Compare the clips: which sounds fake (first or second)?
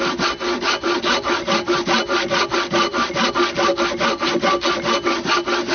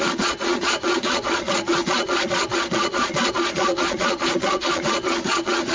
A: second